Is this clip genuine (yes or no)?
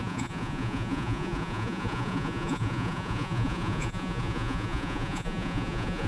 no